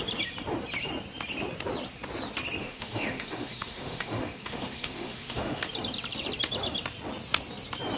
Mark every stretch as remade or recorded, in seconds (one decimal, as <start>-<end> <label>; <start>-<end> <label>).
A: 0.0-2.6 recorded; 2.6-5.6 remade; 5.6-8.0 recorded